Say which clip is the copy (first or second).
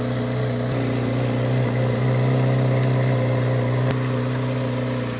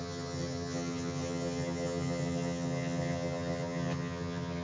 second